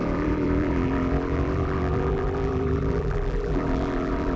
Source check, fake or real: fake